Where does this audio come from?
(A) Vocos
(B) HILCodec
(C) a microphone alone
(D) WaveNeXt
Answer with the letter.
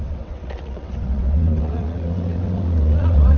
D